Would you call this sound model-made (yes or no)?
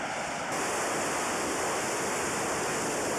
no